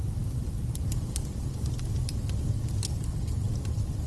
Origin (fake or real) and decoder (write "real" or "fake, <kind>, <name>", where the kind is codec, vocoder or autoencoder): real